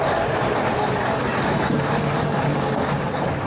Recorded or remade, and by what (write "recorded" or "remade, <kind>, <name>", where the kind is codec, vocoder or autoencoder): recorded